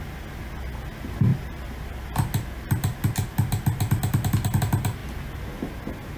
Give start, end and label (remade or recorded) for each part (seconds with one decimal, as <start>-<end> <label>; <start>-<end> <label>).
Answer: 0.0-6.2 recorded